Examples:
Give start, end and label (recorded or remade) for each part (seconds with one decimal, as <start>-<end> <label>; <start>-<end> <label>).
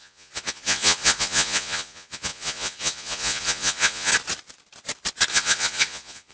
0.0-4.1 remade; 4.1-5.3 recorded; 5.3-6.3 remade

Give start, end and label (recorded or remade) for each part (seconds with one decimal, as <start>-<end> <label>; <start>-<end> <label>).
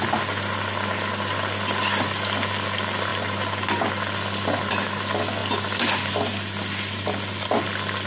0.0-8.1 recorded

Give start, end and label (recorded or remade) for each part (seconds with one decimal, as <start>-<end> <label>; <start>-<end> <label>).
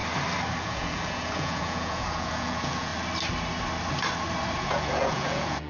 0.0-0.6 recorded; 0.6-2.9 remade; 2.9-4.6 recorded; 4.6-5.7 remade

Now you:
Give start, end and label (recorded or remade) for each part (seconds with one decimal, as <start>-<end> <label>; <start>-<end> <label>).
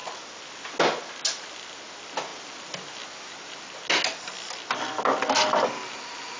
0.0-6.4 recorded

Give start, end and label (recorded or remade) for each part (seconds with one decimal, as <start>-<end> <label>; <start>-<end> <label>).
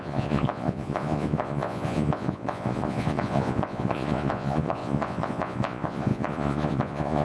0.0-7.2 remade